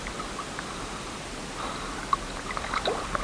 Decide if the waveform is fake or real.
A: real